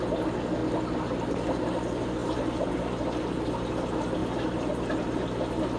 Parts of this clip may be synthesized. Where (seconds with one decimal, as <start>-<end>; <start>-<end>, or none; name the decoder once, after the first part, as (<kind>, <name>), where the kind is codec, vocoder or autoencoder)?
4.2-4.7 (vocoder, BigVGAN v2)